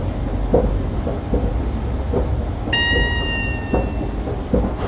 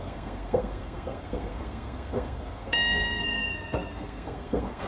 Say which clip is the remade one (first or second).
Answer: second